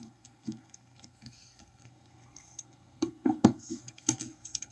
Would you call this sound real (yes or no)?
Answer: no